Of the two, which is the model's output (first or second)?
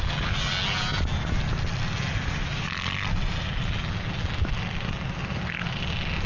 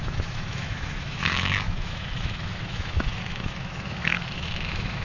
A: second